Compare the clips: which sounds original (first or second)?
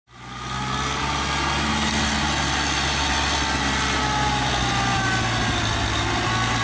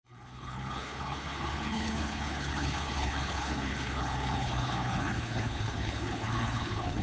first